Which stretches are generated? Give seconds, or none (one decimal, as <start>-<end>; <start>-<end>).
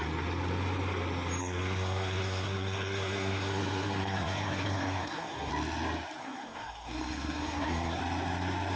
1.4-5.5; 6.2-8.0